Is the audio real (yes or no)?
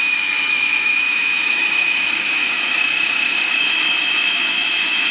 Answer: no